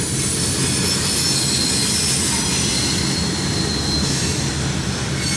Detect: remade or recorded recorded